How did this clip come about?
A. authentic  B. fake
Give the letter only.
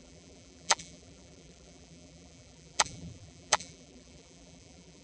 B